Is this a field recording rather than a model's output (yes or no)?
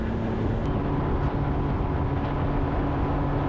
yes